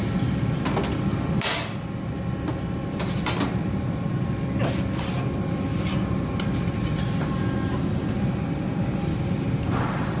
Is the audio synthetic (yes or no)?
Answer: no